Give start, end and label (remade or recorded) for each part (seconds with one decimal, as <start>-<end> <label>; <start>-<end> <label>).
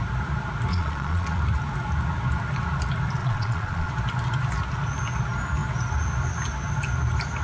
0.0-0.7 recorded; 0.7-1.4 remade; 1.4-3.2 recorded; 3.2-3.9 remade; 3.9-7.4 recorded